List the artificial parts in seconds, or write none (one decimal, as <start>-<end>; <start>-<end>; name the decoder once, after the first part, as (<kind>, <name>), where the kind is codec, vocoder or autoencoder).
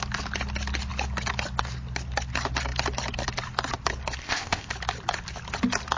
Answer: 4.2-4.7 (codec, ZipCodec)